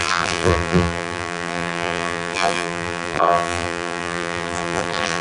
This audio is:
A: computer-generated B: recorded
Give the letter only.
A